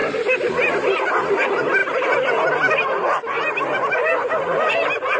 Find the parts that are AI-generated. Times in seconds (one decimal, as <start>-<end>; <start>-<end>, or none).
none